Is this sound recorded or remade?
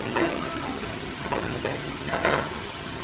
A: remade